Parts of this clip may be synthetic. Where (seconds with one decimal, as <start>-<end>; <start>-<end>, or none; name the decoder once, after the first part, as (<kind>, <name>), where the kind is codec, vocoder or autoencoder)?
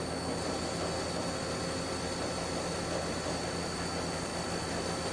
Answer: none